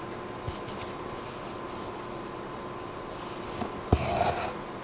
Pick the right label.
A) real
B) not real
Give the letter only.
A